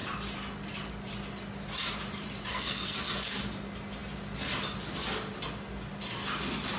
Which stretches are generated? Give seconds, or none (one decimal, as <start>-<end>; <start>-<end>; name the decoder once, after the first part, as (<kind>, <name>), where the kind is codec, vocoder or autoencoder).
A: 2.5-3.4 (codec, SNAC)